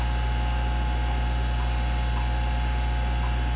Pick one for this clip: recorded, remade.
recorded